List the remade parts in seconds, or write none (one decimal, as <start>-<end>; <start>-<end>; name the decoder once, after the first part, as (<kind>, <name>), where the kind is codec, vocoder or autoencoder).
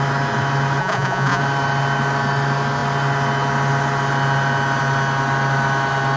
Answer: 0.8-1.4 (vocoder, Vocos)